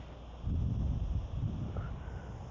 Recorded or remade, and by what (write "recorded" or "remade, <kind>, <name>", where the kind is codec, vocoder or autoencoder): recorded